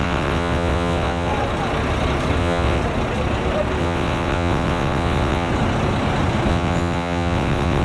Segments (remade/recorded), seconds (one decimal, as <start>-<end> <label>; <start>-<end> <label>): 0.0-1.3 remade; 1.3-2.4 recorded; 2.4-2.8 remade; 2.8-3.8 recorded; 3.8-5.5 remade; 5.5-6.5 recorded; 6.5-7.8 remade